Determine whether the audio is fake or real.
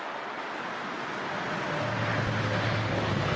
real